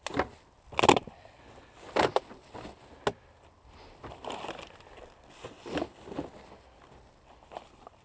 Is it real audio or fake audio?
real